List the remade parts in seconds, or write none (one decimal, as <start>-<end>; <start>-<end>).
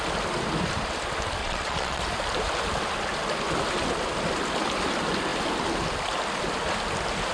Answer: 1.4-2.0